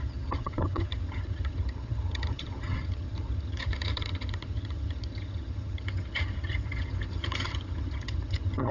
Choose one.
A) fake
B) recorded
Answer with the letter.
A